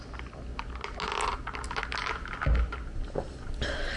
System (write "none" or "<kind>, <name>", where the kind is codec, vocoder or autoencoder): none